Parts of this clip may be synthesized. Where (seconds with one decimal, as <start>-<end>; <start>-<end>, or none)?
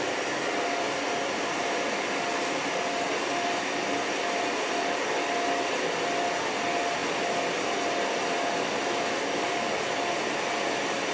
none